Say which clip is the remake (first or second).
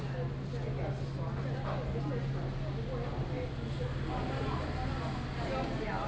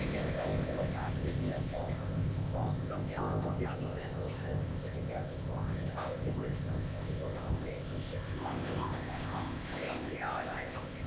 second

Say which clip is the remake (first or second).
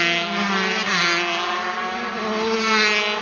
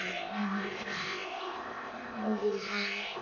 second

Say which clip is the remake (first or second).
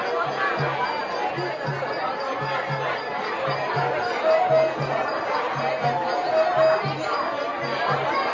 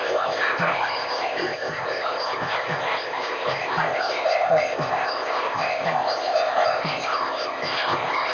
second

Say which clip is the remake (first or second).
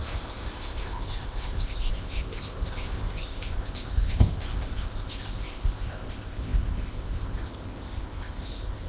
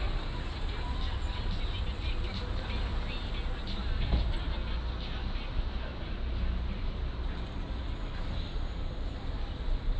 first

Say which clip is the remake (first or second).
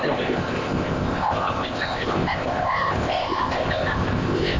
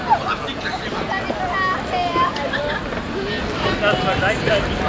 first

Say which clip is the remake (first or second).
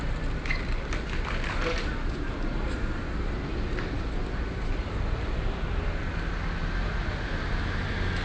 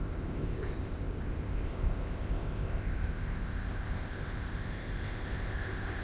second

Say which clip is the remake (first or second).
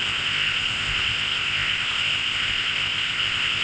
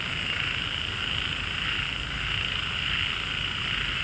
first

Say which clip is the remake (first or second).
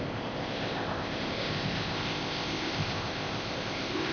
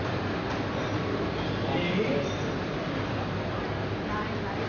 first